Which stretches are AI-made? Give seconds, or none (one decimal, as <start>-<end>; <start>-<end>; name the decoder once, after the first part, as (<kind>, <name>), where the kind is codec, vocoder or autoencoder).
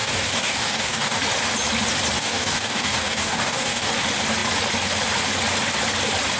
0.0-1.2 (codec, DAC); 2.2-3.9